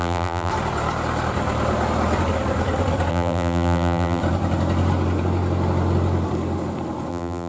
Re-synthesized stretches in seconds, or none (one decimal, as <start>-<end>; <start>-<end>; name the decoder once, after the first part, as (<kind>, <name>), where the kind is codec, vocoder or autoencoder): 0.0-0.5 (vocoder, BigVGAN v2); 3.1-4.2; 7.1-7.5

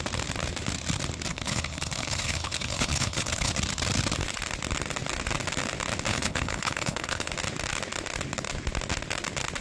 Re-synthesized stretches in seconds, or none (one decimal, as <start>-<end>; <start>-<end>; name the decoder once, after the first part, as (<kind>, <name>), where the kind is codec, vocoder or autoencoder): 1.3-3.5 (codec, HILCodec); 6.1-7.3

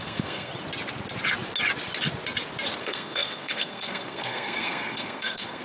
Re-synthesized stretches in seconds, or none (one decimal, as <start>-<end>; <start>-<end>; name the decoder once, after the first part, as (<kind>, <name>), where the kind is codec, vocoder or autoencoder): 0.0-0.5 (codec, SNAC); 2.8-5.6

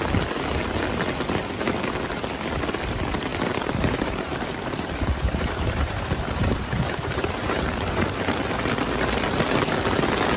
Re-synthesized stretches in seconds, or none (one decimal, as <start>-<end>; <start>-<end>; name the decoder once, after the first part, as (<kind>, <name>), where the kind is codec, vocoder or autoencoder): 3.3-8.4 (vocoder, BigVGAN v2)